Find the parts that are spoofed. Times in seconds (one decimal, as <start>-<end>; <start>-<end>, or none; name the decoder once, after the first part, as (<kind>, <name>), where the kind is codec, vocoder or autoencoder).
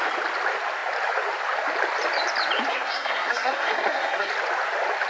2.7-4.3 (codec, SNAC)